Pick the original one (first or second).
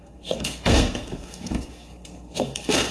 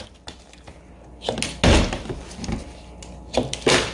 second